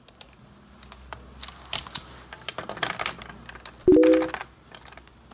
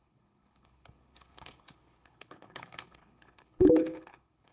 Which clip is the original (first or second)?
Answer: first